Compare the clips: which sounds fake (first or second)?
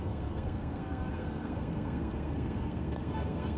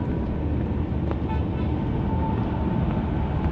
first